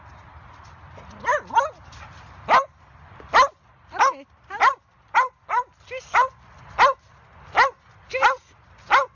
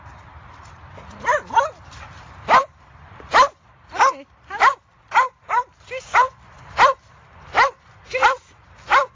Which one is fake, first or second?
second